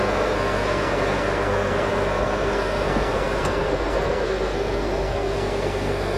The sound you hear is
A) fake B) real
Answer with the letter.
A